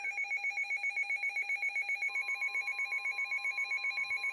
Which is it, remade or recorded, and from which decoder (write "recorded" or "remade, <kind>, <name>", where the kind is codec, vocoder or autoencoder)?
remade, autoencoder, DAC-VAE